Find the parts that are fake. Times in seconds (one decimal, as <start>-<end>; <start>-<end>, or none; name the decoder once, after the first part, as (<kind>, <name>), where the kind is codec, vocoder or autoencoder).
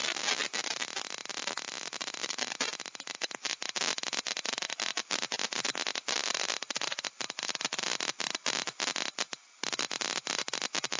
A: none